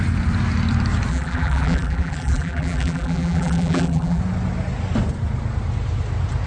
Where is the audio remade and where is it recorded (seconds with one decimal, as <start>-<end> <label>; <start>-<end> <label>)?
0.0-1.1 recorded; 1.1-4.2 remade; 4.2-6.5 recorded